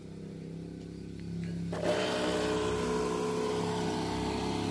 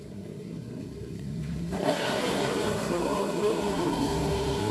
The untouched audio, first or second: first